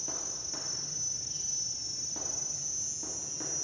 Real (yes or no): yes